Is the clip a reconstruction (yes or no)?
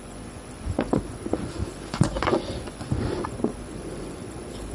yes